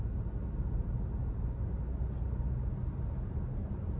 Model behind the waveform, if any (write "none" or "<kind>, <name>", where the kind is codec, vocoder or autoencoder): none